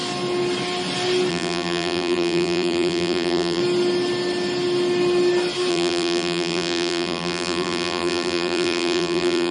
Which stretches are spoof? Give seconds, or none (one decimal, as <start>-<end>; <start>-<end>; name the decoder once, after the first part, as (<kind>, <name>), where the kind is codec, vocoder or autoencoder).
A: 1.3-3.6 (vocoder, BigVGAN v2); 5.7-9.5